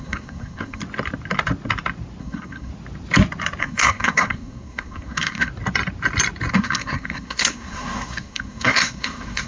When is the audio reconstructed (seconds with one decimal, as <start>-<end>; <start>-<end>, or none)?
0.0-0.8; 2.2-2.7; 3.6-5.5; 6.5-9.5